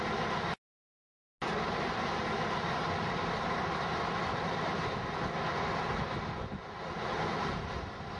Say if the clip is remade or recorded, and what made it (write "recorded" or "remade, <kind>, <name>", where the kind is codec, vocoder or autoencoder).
recorded